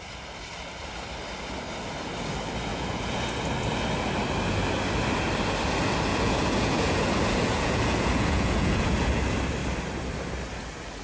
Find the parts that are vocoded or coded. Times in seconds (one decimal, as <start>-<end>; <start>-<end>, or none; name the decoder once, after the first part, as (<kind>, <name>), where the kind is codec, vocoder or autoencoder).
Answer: 2.7-3.2 (vocoder, Vocos); 6.1-9.1